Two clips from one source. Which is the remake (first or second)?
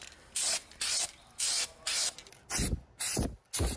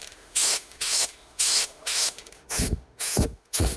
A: second